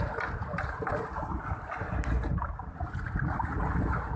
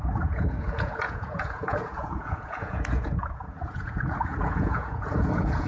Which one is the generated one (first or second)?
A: second